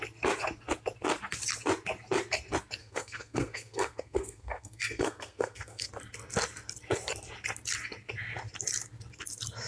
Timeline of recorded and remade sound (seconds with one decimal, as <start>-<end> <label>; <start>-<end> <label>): 0.0-2.8 recorded; 2.8-5.9 remade; 5.9-9.7 recorded